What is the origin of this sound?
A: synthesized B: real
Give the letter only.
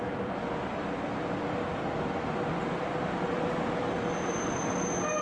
B